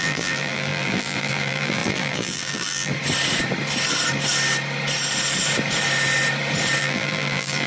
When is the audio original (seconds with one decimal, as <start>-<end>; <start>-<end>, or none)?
2.9-6.8